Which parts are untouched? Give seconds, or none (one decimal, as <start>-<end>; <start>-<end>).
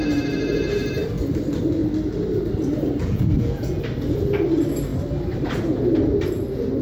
0.0-3.0; 3.8-6.8